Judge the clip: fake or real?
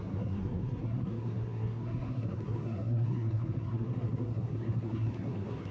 fake